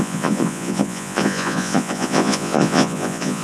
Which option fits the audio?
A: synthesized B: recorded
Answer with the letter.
A